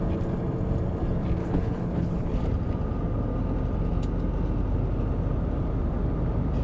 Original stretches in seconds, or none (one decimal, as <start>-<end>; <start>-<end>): 0.0-1.4; 2.4-6.6